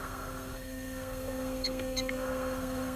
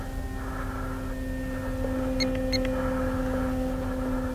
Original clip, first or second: second